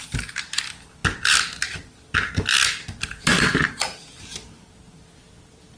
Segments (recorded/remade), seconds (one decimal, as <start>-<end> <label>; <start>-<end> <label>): 0.0-5.8 recorded